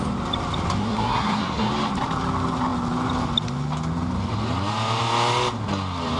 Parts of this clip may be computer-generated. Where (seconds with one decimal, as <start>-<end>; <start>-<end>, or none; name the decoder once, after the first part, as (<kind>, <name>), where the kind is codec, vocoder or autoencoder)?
0.8-1.7 (codec, SNAC)

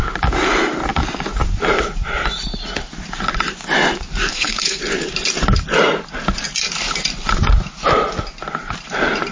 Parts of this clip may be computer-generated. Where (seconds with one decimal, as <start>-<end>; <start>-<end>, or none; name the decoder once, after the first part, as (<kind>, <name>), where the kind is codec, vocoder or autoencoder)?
4.3-4.8 (codec, SNAC)

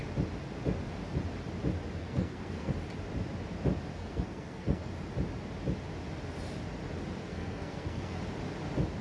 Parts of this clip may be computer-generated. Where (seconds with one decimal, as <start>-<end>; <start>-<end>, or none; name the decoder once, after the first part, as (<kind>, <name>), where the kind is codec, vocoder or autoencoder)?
2.0-2.7 (codec, SNAC); 3.9-4.9; 7.2-8.2

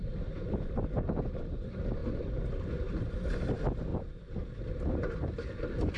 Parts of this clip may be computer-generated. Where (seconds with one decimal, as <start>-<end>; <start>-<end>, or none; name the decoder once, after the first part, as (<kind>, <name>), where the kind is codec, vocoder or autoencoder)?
none

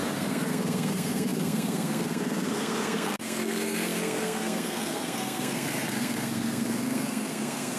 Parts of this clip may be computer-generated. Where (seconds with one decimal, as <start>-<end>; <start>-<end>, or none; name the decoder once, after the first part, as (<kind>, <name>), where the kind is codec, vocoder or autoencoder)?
0.0-7.8 (codec, SNAC)

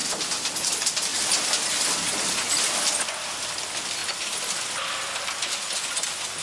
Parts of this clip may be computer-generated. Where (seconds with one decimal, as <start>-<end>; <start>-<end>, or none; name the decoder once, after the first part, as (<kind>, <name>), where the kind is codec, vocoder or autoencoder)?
none

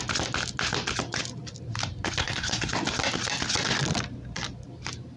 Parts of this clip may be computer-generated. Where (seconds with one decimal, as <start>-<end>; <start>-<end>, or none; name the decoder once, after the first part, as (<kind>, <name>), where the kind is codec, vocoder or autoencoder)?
2.2-2.7 (codec, SNAC)